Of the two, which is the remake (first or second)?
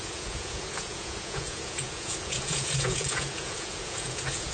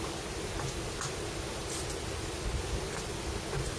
first